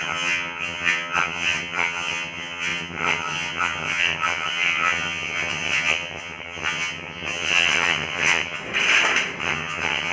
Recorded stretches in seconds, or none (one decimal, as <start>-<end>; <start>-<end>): 8.6-9.4